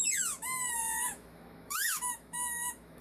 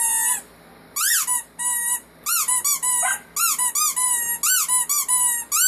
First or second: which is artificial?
first